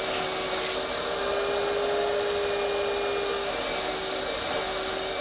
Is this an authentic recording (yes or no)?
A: yes